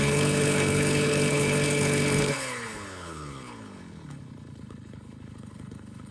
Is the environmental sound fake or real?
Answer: fake